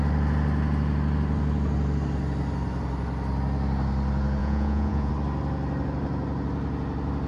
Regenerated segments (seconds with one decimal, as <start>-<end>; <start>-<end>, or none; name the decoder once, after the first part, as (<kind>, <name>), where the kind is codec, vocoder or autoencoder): 4.4-5.1 (vocoder, Vocos)